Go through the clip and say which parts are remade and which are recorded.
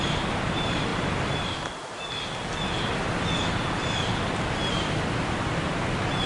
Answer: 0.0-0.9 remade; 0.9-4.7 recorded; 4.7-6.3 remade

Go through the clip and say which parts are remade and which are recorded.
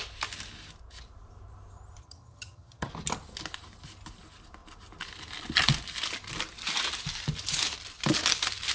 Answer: 0.0-2.0 recorded; 2.0-2.9 remade; 2.9-8.7 recorded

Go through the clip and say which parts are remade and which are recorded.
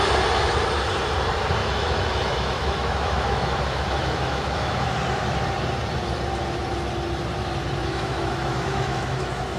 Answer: 0.0-1.6 recorded; 1.6-4.9 remade; 4.9-7.8 recorded; 7.8-9.6 remade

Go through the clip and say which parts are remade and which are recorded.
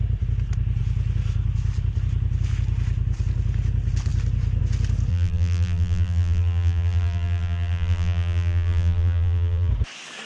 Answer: 0.0-5.1 recorded; 5.1-9.7 remade; 9.7-10.3 recorded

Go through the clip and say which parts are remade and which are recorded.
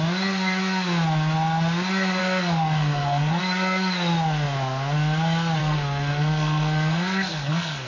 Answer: 0.0-2.2 recorded; 2.2-3.4 remade; 3.4-5.6 recorded; 5.6-7.9 remade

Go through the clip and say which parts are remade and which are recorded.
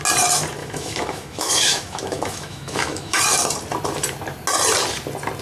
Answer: 0.0-0.6 recorded; 0.6-3.2 remade; 3.2-5.4 recorded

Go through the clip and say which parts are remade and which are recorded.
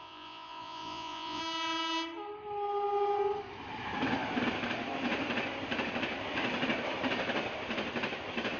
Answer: 0.0-1.4 remade; 1.4-8.6 recorded